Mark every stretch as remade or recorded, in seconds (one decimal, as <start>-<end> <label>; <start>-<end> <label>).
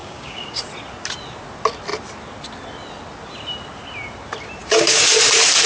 0.0-0.6 remade; 0.6-4.6 recorded; 4.6-5.1 remade; 5.1-5.7 recorded